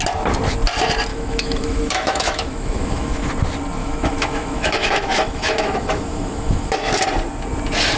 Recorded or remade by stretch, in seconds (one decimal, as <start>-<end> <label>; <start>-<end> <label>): 0.0-1.1 recorded; 1.1-3.3 remade; 3.3-3.8 recorded; 3.8-7.0 remade; 7.0-8.0 recorded